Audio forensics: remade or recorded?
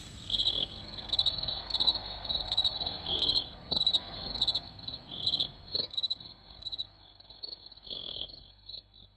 remade